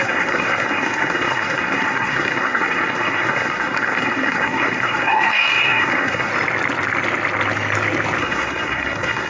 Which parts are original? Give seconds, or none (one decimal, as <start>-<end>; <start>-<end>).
6.3-8.2